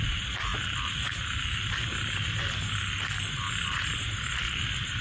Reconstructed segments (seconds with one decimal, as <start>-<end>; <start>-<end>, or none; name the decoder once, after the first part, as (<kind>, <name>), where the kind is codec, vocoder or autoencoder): none